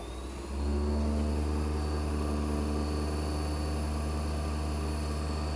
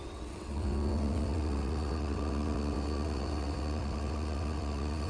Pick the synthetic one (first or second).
second